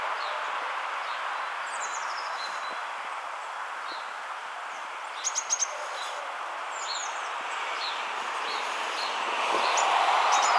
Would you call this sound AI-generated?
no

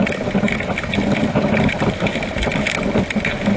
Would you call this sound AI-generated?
no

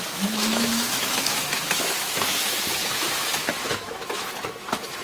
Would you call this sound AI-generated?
yes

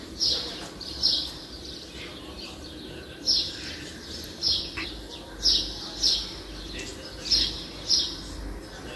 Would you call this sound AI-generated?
no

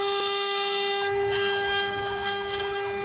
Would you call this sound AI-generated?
yes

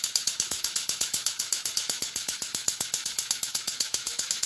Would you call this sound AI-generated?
yes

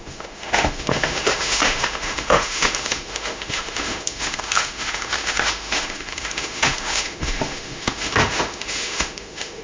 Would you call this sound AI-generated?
yes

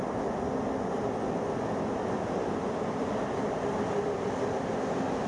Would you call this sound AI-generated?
no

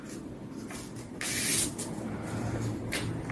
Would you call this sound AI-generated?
no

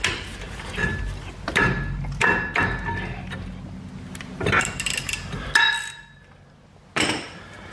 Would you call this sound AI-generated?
no